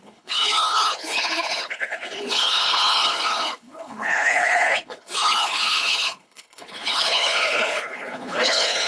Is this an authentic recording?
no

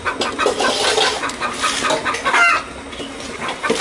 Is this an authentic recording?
yes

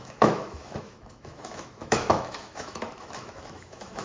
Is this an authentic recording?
no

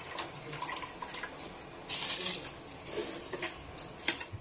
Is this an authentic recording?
yes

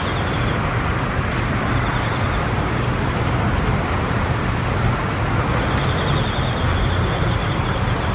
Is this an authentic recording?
yes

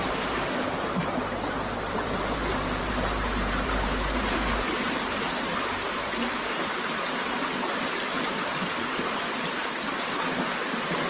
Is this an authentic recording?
no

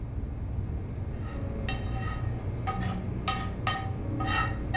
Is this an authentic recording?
yes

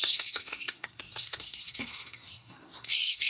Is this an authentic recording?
no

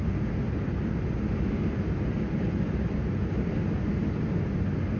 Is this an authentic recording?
yes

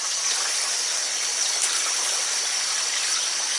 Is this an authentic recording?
yes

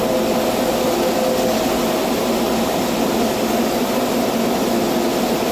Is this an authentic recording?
yes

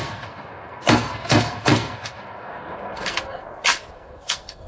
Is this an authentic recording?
no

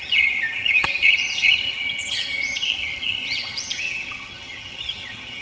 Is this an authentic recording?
no